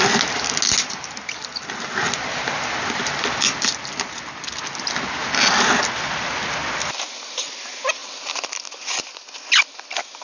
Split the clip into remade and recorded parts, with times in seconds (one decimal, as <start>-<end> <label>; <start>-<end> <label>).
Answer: 0.0-10.2 recorded